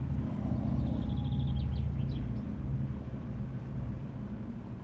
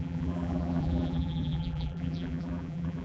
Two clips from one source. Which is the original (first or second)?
first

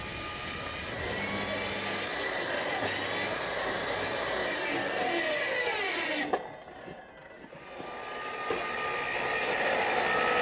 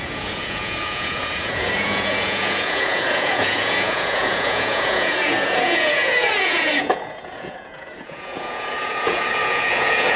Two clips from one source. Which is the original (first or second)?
first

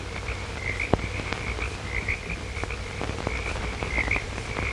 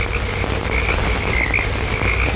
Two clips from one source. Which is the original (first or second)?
second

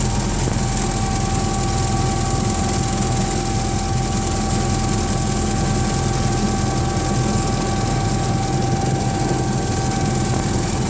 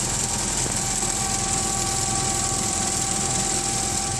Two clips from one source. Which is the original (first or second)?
first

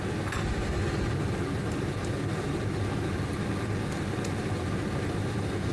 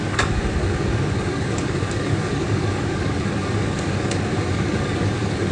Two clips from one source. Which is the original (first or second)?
first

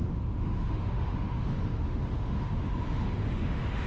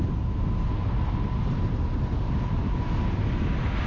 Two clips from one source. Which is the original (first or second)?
second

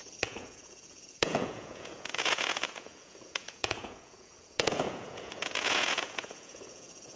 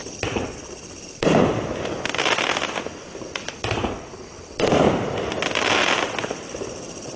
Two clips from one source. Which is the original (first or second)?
second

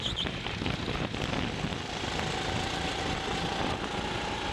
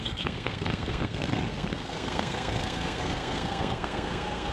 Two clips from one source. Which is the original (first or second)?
first